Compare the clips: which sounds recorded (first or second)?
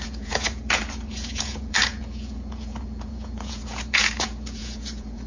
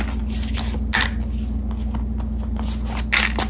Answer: second